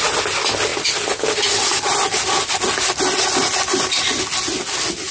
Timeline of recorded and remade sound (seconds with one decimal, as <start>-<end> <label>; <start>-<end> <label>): 0.0-5.1 recorded